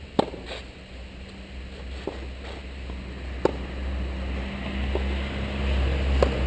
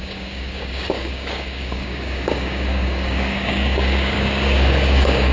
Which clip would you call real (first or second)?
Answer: first